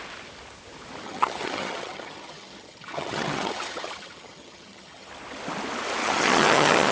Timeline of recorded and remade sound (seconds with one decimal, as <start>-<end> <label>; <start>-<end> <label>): 0.0-1.0 recorded; 1.0-5.1 remade; 5.1-6.0 recorded; 6.0-6.9 remade